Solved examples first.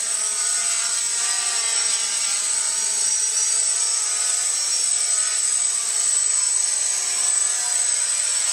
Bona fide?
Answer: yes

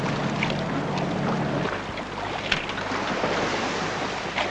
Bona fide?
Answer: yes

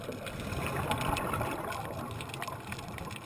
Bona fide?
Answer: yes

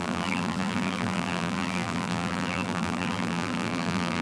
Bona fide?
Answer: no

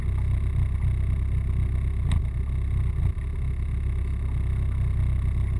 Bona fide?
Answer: yes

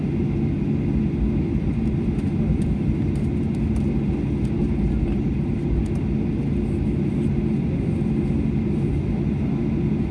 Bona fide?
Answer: yes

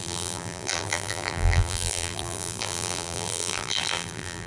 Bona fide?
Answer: no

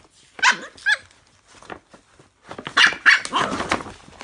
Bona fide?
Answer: yes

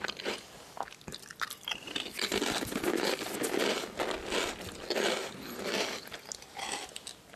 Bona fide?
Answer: yes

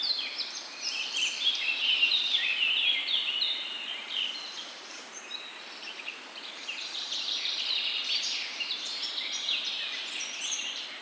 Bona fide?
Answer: no